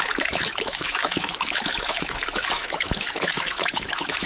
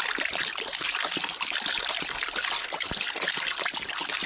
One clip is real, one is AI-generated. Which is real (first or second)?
second